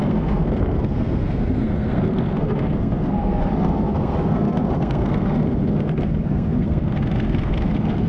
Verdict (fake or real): fake